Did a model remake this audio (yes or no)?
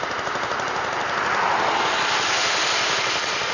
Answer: no